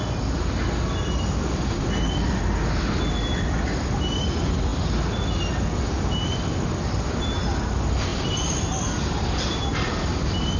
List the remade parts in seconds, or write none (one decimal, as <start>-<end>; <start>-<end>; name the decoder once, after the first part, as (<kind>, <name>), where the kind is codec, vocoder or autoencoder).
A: none

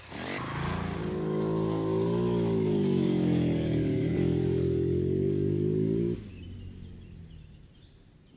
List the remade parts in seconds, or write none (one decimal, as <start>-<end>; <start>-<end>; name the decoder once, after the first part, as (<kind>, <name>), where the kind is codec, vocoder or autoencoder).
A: 1.0-6.0 (codec, DAC)

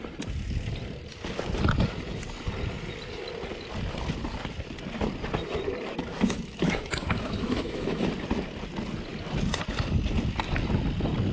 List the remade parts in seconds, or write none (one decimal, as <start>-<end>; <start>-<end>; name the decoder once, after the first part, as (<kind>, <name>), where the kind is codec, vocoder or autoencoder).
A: 6.1-8.1 (autoencoder, DAC-VAE)